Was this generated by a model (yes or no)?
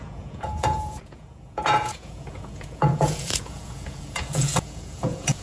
yes